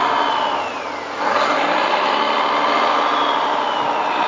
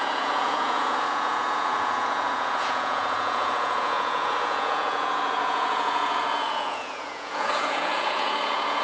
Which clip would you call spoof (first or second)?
second